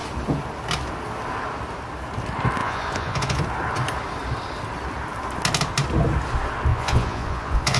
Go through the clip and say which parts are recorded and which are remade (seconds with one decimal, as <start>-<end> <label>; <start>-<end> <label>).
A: 0.0-2.6 recorded; 2.6-3.4 remade; 3.4-6.7 recorded; 6.7-7.8 remade